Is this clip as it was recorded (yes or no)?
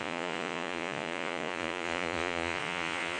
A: no